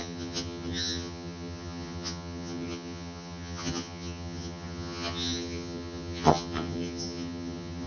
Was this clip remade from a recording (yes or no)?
yes